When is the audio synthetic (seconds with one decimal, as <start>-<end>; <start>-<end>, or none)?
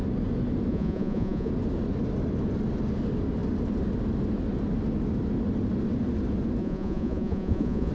0.7-1.5; 6.6-7.9